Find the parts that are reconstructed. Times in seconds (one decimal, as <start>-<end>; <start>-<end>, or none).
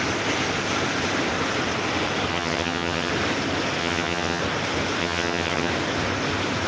2.3-3.1; 3.8-4.4; 5.0-5.7